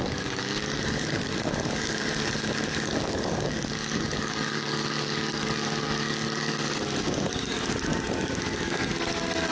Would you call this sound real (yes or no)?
no